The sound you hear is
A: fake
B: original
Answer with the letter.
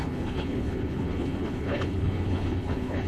A